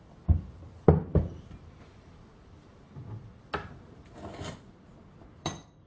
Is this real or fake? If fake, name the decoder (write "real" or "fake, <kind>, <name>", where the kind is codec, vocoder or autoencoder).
real